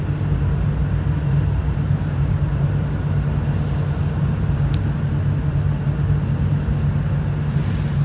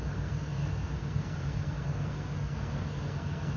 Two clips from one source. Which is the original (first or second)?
first